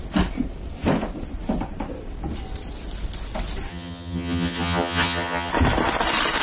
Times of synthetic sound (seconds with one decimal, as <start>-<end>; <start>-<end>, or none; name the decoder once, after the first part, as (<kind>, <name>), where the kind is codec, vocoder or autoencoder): 3.7-5.5 (vocoder, HiFi-GAN)